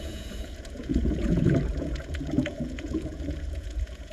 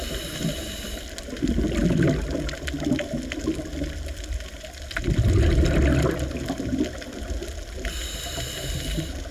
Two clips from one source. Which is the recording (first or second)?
second